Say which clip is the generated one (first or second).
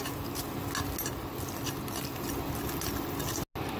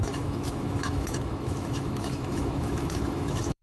second